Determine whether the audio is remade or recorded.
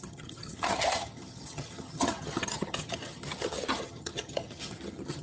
remade